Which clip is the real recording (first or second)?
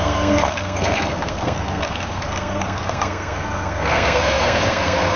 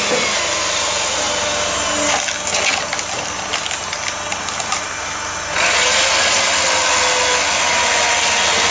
second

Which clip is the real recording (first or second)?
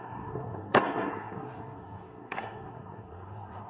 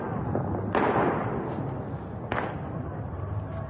second